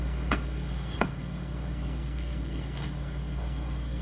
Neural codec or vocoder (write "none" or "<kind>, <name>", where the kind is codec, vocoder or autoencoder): codec, SNAC